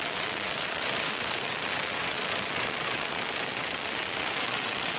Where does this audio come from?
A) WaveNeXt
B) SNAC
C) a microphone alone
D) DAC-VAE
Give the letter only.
A